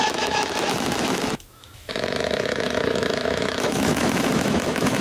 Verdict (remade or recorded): remade